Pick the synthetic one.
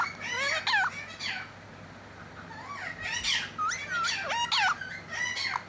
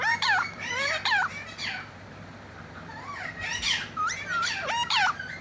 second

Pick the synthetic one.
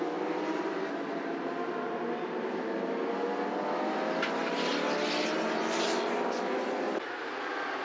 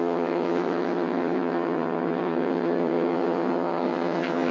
second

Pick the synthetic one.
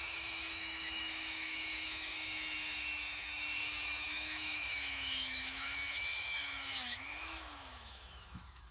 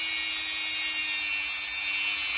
first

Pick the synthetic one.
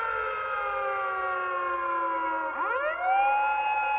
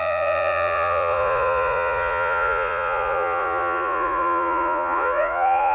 second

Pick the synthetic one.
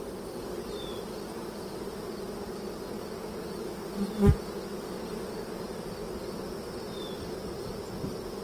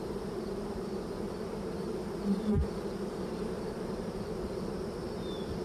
second